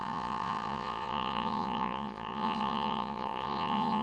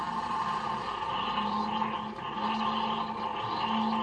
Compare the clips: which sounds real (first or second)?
second